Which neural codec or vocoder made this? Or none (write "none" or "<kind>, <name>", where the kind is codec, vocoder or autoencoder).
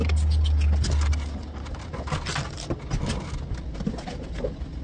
none